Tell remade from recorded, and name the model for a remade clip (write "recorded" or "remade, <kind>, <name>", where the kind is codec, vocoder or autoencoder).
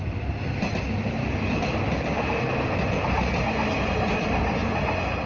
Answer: recorded